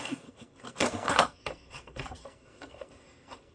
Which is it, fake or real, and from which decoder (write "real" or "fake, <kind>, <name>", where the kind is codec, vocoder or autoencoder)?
fake, codec, SNAC